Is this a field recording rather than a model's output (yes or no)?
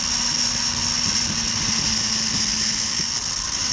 yes